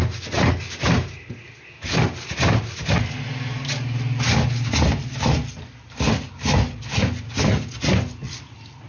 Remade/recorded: recorded